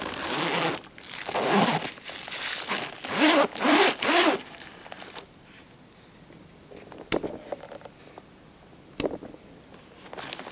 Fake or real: real